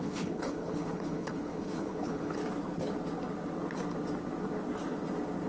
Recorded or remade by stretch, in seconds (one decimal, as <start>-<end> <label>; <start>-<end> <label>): 0.0-2.4 remade; 2.4-5.5 recorded